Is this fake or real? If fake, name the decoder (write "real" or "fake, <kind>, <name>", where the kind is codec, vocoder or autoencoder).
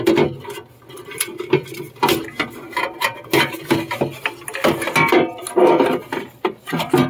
real